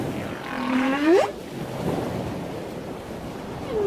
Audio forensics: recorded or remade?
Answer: recorded